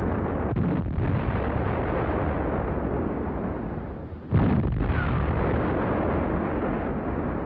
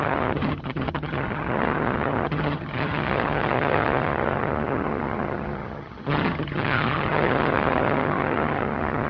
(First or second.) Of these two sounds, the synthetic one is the second